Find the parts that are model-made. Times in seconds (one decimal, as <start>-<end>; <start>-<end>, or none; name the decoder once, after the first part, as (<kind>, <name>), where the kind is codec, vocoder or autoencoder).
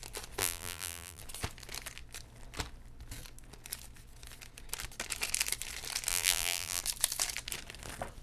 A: 0.4-1.2 (vocoder, BigVGAN v2); 6.1-6.8